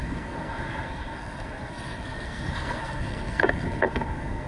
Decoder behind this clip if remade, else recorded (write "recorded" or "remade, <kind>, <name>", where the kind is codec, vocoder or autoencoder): remade, codec, SNAC